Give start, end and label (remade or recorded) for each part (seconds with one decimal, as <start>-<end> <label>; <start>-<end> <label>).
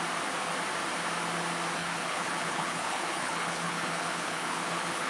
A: 0.0-1.8 recorded; 1.8-5.1 remade